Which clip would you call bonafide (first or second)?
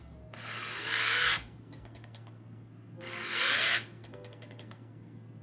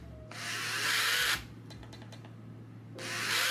second